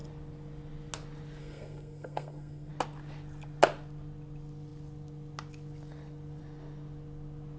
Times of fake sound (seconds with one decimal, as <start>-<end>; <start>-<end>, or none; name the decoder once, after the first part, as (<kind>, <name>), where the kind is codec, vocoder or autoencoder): 1.4-2.7 (codec, SNAC)